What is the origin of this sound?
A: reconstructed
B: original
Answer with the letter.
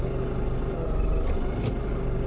B